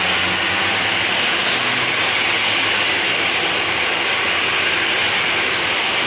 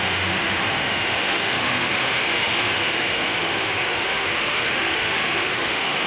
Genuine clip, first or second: first